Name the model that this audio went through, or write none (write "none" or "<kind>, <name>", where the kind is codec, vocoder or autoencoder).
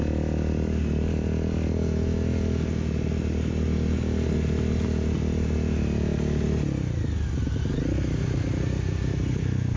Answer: none